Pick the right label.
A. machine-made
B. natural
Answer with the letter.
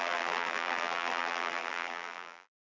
A